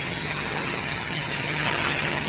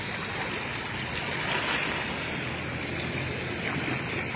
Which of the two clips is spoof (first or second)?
first